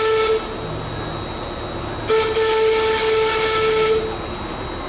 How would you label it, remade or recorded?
recorded